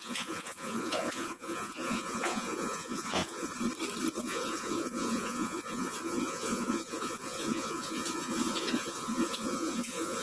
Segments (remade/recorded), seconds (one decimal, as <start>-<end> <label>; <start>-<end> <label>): 0.0-3.5 remade; 3.5-4.2 recorded; 4.2-10.2 remade